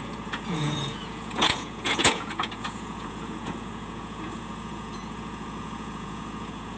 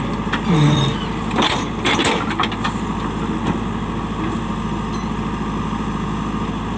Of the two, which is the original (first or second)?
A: second